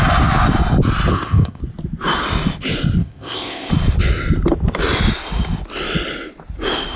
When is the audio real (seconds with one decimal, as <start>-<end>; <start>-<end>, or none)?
0.0-1.1; 1.6-3.0; 3.7-7.0